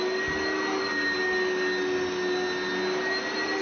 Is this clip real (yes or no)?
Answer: yes